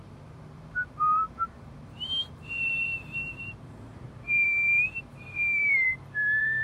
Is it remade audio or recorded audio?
remade